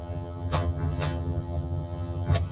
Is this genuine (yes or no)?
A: no